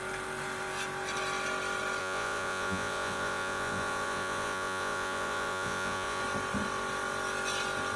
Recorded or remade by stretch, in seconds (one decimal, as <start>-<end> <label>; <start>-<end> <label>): 0.0-2.0 recorded; 2.0-6.2 remade; 6.2-8.0 recorded